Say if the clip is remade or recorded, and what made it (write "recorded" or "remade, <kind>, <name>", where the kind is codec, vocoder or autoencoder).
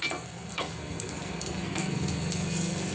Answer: remade, codec, SNAC